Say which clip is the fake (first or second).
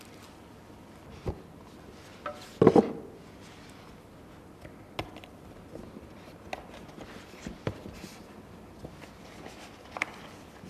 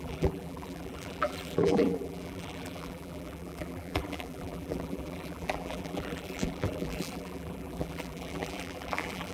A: second